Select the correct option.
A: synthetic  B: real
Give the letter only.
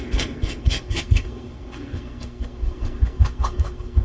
A